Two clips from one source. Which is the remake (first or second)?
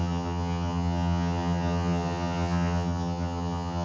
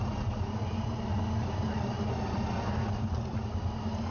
first